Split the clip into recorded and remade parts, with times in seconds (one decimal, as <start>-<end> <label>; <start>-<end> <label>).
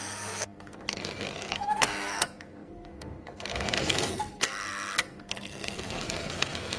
0.0-6.8 remade